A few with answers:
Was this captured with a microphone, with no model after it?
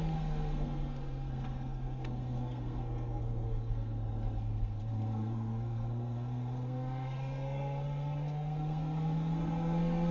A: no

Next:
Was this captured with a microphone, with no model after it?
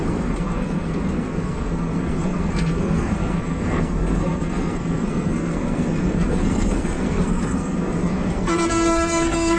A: no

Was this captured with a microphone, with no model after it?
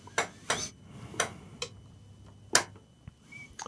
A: yes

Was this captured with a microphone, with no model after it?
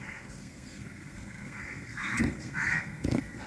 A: no